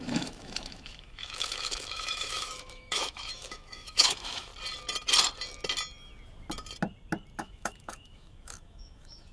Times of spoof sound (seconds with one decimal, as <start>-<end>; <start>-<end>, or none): 0.0-4.5; 7.4-9.3